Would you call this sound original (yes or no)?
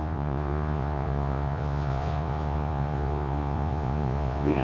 no